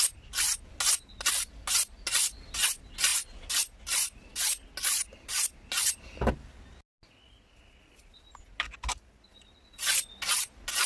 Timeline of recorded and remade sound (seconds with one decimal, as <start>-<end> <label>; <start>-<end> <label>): 0.0-10.9 recorded